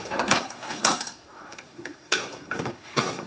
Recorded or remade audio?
remade